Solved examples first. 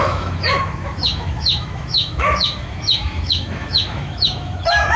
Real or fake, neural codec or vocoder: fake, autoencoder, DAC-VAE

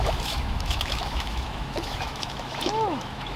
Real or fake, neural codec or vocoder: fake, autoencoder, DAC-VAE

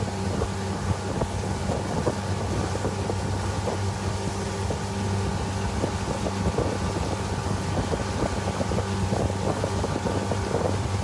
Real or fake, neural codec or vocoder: real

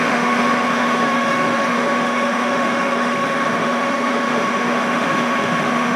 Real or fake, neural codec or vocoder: fake, autoencoder, DAC-VAE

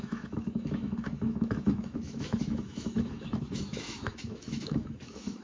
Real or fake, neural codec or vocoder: fake, autoencoder, DAC-VAE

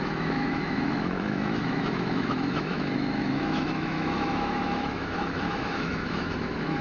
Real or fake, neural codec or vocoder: fake, autoencoder, DAC-VAE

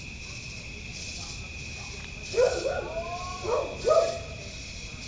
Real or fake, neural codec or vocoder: real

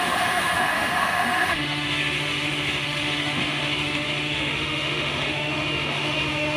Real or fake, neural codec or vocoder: fake, autoencoder, DAC-VAE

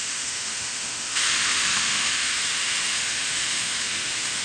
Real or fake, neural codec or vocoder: fake, autoencoder, DAC-VAE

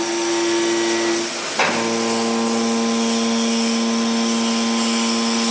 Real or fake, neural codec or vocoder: real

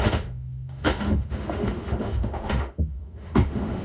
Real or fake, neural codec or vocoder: fake, autoencoder, DAC-VAE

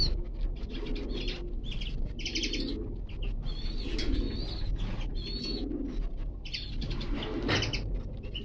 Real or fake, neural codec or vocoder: real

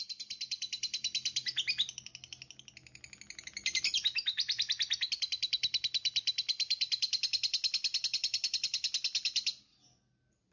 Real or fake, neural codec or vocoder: real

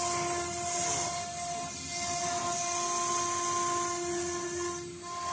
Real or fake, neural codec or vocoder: real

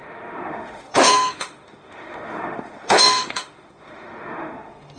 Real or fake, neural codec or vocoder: fake, autoencoder, DAC-VAE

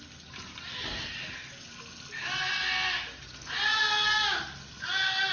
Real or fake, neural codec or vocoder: real